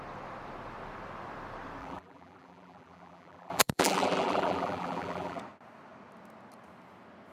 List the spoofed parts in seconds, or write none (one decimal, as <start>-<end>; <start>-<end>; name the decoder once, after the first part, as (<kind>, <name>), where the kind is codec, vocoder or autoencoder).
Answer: 1.8-5.4 (vocoder, BigVGAN v2)